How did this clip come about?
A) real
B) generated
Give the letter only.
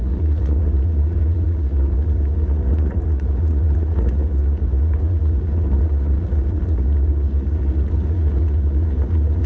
B